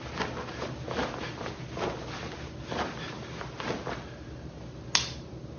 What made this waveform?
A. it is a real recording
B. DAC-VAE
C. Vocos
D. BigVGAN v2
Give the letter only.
A